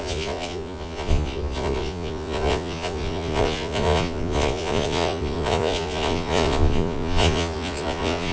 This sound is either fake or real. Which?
fake